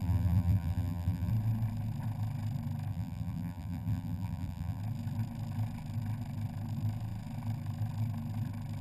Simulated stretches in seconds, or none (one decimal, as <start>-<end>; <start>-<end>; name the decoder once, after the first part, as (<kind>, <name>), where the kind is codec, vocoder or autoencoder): 0.0-1.3 (vocoder, BigVGAN v2); 2.9-4.8